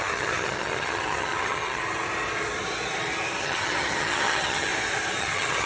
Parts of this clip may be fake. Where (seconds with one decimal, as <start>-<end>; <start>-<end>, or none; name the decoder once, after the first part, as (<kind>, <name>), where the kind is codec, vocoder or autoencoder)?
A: 0.0-1.8 (vocoder, HiFi-GAN); 3.4-4.7; 5.2-5.7